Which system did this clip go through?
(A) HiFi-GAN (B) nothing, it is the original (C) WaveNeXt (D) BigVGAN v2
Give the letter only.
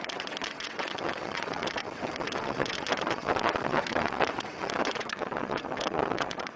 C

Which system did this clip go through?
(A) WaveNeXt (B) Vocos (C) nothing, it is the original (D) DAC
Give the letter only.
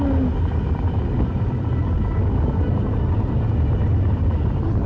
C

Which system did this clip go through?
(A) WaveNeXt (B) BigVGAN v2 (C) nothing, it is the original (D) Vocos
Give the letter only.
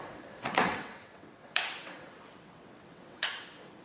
A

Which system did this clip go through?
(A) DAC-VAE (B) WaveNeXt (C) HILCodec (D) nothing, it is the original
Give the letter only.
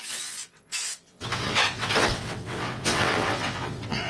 B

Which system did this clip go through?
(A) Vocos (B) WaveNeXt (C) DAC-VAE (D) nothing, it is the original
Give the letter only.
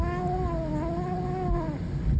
D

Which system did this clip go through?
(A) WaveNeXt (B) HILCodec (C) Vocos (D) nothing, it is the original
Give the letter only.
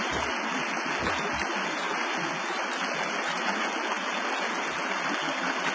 D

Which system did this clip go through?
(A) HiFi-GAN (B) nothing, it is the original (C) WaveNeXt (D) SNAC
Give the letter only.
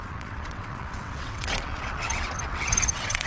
C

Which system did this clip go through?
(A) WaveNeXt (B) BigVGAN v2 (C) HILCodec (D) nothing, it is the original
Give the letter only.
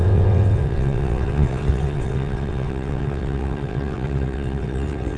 A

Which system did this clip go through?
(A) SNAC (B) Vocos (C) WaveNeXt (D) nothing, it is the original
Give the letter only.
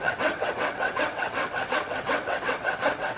C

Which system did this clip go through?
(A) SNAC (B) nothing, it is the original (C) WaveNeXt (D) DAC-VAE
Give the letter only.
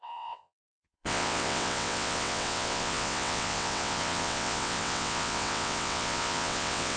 C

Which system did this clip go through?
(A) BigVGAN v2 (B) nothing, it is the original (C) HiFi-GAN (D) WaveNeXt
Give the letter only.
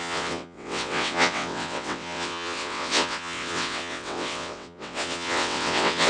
D